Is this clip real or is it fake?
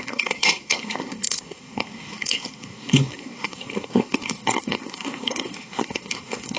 fake